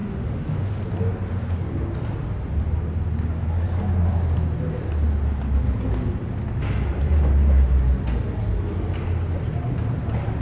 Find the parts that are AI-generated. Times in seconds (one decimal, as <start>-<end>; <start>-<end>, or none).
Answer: 0.0-0.7